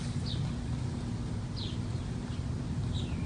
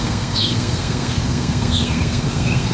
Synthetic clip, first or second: second